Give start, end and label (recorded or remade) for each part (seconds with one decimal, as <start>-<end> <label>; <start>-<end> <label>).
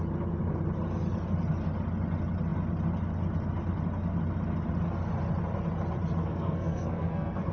0.0-6.2 recorded; 6.2-7.5 remade